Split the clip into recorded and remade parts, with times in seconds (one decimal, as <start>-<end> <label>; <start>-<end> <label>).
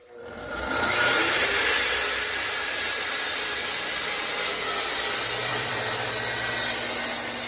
0.0-4.5 remade; 4.5-5.5 recorded; 5.5-6.1 remade; 6.1-7.5 recorded